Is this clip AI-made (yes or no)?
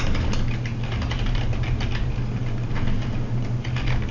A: no